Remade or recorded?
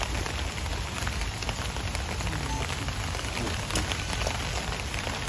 recorded